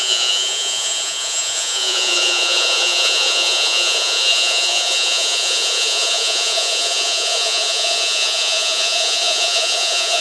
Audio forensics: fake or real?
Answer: fake